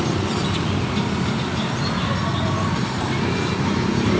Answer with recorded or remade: recorded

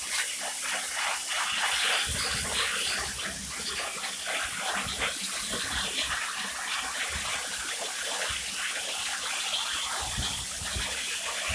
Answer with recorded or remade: recorded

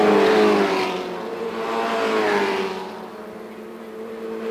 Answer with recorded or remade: recorded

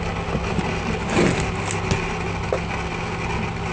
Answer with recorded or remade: recorded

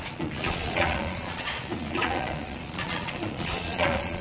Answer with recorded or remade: remade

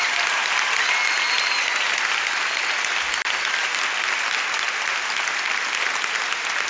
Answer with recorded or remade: recorded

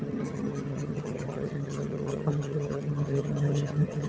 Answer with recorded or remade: remade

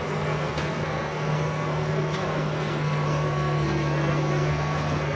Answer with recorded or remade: remade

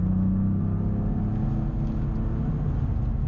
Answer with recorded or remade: recorded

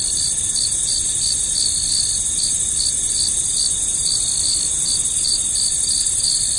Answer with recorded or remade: recorded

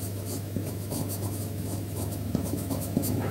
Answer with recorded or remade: remade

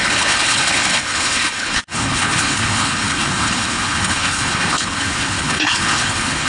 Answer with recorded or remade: remade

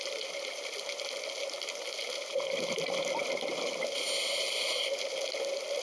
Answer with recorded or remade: recorded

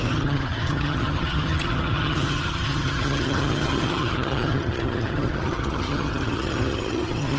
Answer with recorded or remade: remade